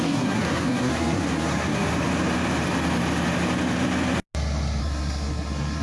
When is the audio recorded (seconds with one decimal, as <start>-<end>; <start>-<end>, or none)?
1.9-4.8